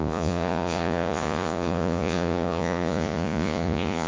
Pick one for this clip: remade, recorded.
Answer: remade